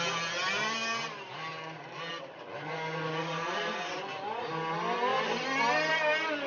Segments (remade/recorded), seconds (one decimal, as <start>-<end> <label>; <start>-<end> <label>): 0.0-3.2 recorded; 3.2-4.5 remade; 4.5-6.5 recorded